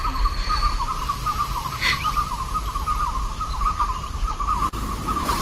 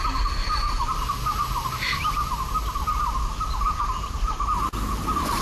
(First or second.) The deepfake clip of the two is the first